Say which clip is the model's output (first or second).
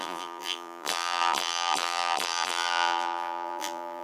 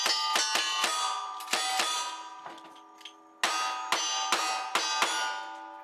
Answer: first